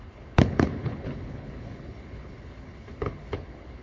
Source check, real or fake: fake